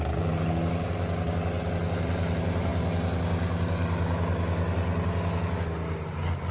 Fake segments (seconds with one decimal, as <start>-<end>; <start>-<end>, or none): none